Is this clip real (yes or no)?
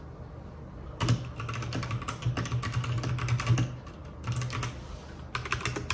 yes